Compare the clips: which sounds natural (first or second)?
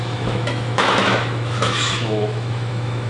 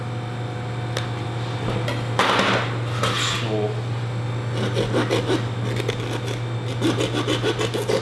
second